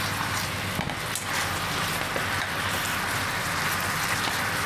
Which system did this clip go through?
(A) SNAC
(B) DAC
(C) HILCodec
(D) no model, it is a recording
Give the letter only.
D